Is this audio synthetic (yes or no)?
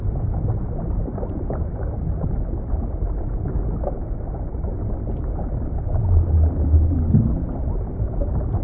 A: no